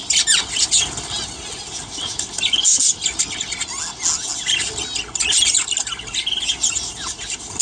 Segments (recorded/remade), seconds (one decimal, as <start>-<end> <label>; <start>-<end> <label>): 0.0-7.6 recorded